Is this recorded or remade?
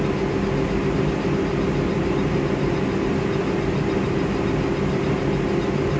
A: recorded